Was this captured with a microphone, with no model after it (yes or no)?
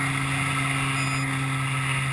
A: yes